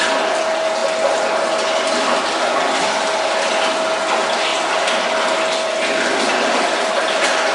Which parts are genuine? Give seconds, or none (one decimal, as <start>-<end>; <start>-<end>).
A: 0.0-7.5